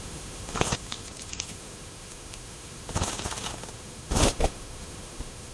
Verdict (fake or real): fake